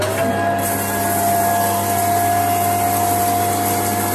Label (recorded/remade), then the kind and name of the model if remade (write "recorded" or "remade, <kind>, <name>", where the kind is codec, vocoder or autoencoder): recorded